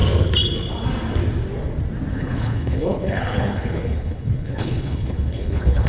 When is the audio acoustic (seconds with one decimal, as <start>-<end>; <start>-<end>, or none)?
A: 0.0-2.1